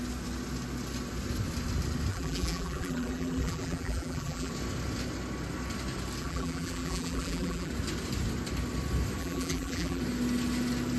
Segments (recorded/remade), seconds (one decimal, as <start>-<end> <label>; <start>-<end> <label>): 0.0-2.1 recorded; 2.1-4.5 remade; 4.5-6.2 recorded; 6.2-7.7 remade; 7.7-9.2 recorded; 9.2-10.0 remade; 10.0-11.0 recorded